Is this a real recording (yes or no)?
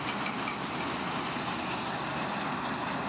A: yes